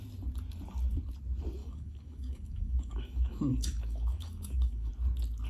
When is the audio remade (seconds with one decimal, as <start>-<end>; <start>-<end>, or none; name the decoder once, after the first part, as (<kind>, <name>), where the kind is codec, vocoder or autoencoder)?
1.6-4.9 (autoencoder, DAC-VAE)